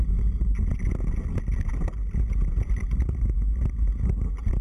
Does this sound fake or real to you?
real